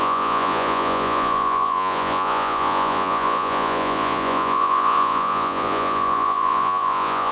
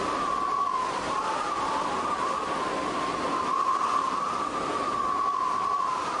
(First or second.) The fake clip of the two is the first